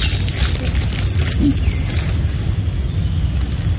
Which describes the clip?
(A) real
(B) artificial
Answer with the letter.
A